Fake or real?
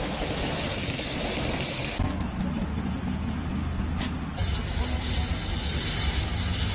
real